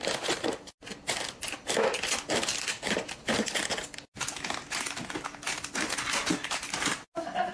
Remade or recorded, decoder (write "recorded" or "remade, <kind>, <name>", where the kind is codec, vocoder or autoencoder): recorded